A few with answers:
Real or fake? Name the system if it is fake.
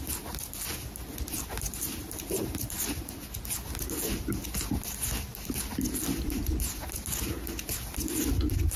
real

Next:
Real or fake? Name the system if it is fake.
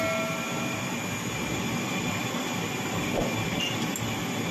real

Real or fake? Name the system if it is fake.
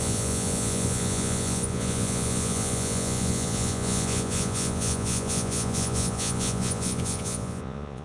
fake, vocoder, Vocos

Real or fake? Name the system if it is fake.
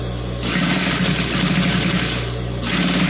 real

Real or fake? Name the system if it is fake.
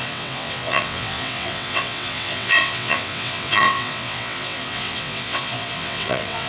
fake, vocoder, WaveNeXt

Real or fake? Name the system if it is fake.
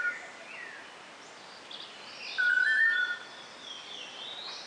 real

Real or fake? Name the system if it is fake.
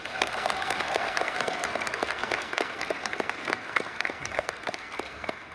fake, codec, SNAC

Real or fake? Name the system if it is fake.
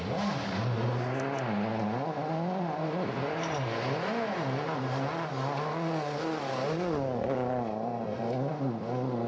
real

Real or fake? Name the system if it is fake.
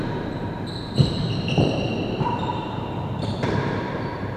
fake, vocoder, BigVGAN v2